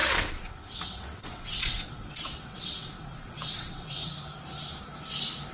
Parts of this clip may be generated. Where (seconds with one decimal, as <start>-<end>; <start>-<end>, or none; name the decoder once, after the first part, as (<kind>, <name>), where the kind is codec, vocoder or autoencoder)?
0.0-4.1 (vocoder, WaveNeXt)